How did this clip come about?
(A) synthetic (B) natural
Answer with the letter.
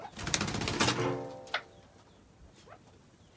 B